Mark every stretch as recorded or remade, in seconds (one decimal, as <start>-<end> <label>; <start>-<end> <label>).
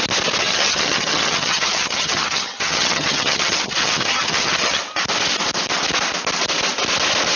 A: 0.0-0.4 recorded; 0.4-4.8 remade; 4.8-7.4 recorded